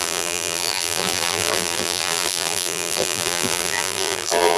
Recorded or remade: remade